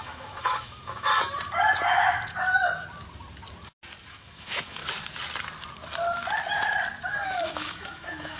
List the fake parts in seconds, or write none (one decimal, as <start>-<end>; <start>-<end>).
0.0-1.1; 4.1-4.8; 7.1-8.4